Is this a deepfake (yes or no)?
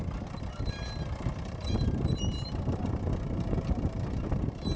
no